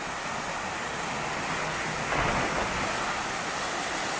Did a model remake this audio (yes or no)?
no